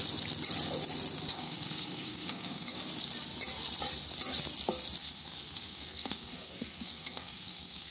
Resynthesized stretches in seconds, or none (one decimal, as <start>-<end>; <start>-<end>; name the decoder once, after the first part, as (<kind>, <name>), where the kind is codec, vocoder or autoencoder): 1.3-2.8 (codec, SNAC); 5.0-7.9